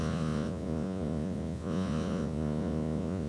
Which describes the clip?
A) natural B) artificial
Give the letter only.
B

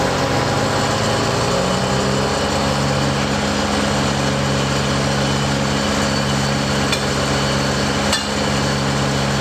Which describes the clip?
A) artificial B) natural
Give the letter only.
B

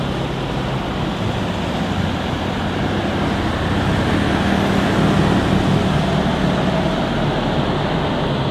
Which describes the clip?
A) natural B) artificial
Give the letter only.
A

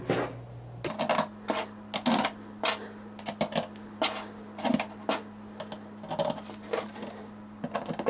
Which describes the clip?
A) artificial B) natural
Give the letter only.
B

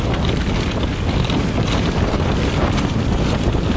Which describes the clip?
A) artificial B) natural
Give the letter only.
B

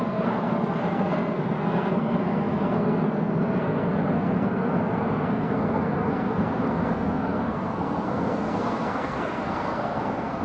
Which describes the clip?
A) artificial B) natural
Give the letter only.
A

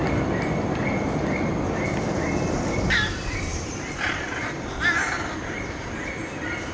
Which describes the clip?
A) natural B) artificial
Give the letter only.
A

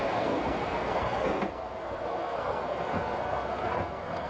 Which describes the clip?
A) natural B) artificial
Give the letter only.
B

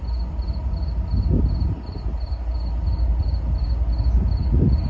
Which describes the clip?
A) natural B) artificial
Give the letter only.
A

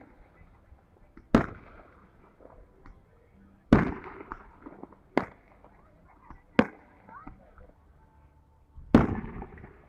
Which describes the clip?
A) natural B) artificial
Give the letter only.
A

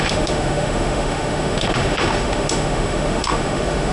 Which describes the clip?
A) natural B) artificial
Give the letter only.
B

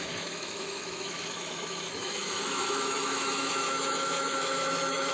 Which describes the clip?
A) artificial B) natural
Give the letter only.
A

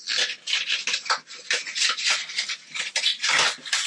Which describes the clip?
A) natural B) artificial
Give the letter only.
A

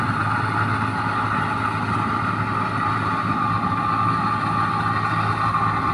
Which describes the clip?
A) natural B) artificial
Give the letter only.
A